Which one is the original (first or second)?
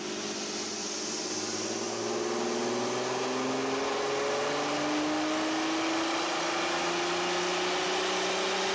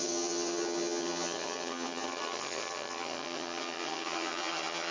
first